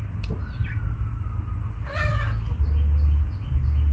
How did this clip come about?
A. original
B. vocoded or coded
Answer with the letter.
A